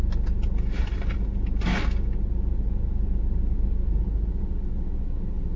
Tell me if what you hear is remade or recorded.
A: recorded